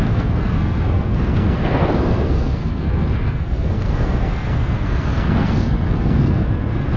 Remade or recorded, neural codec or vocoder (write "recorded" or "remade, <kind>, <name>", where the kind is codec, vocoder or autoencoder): remade, codec, SNAC